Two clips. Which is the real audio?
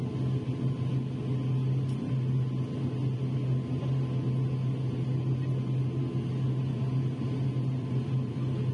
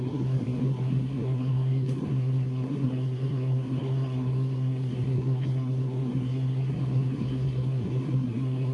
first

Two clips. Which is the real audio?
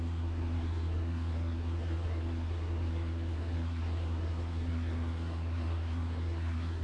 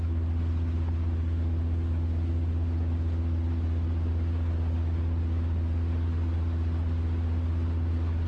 second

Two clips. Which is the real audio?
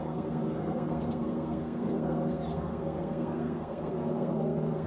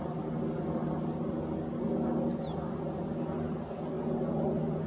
second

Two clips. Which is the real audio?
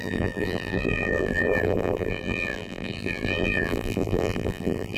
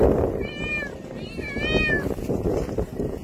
second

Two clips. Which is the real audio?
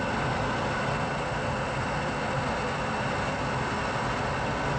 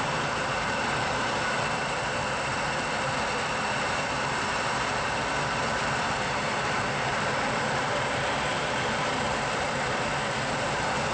first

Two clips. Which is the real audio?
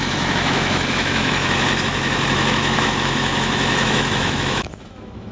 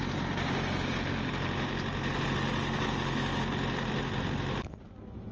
second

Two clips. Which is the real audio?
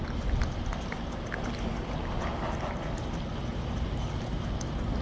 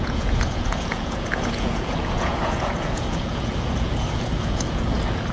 first